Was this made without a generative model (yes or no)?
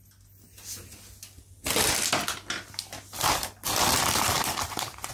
yes